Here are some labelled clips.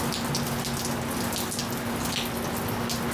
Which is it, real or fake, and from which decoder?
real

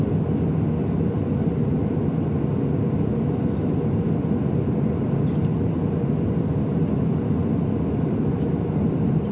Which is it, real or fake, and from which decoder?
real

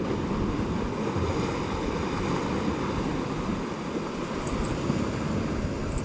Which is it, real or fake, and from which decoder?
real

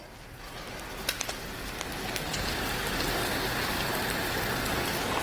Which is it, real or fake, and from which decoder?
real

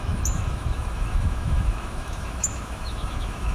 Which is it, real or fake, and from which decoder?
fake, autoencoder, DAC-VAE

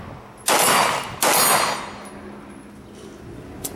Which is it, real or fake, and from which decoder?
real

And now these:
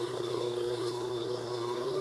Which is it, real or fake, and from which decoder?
fake, codec, SNAC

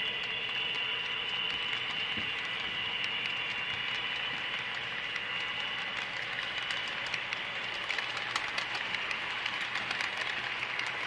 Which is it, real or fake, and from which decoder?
real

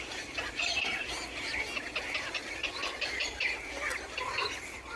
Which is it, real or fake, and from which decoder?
real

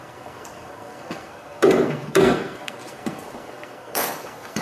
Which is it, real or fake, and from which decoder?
fake, codec, SNAC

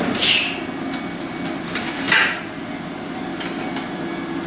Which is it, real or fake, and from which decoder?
real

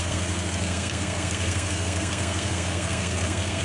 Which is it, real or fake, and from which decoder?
fake, codec, SNAC